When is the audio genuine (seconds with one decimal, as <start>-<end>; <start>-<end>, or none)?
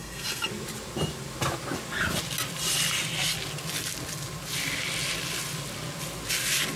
0.5-6.8